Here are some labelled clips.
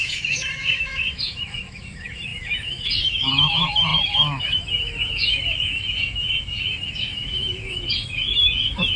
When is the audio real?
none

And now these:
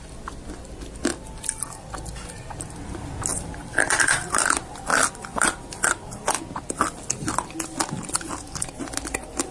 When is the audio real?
0.0-1.1; 1.8-3.3; 4.3-4.9; 6.4-9.5

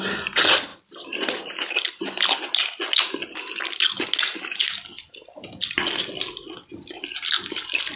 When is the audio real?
0.0-0.7; 2.4-6.7; 7.3-8.0

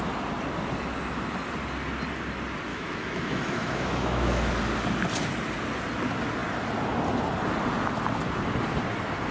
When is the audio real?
0.0-2.7; 4.5-9.3

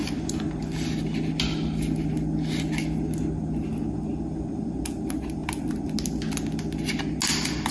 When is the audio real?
0.0-7.7

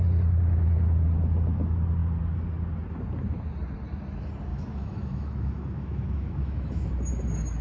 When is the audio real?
0.0-4.5; 6.9-7.6

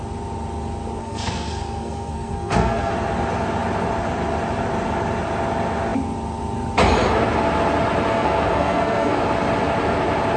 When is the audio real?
0.0-1.0; 2.9-8.1; 9.2-10.4